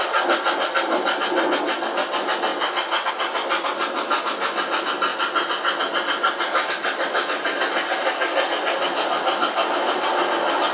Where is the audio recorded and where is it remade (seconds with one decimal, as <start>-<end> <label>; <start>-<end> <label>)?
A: 0.0-10.7 recorded